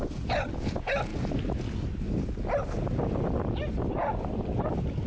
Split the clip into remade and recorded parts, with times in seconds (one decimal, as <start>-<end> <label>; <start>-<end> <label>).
0.0-5.1 recorded